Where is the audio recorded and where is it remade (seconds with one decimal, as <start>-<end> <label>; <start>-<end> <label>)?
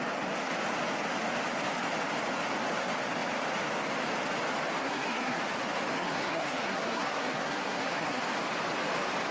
0.0-4.8 recorded; 4.8-5.4 remade; 5.4-5.9 recorded; 5.9-8.3 remade; 8.3-9.3 recorded